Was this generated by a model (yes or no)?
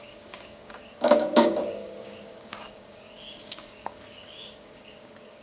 yes